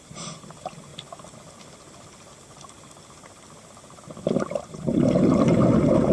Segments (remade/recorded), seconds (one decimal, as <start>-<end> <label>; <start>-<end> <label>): 0.0-0.9 remade; 0.9-4.6 recorded; 4.6-6.1 remade